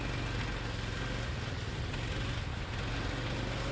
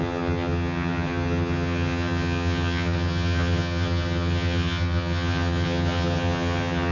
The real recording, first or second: first